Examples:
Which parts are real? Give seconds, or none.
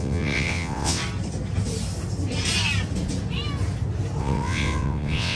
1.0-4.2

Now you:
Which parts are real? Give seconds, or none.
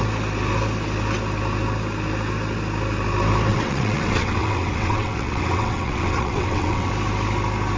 0.0-3.5; 6.9-7.8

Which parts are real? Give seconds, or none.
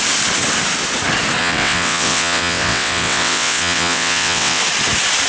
0.0-1.4; 4.6-5.3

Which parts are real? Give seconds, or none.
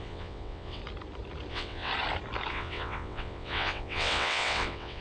0.8-1.5; 1.9-2.5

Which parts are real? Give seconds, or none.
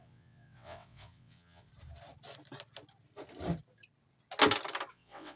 1.7-4.9